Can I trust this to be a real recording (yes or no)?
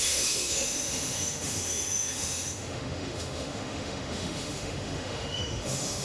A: no